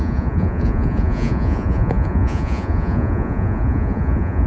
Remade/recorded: remade